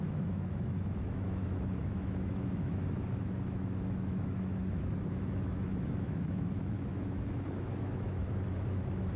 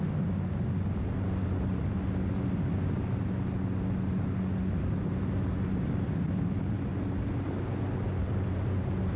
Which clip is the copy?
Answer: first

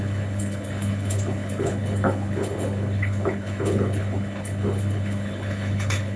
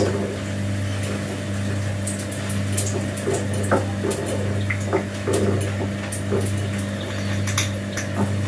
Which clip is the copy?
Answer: first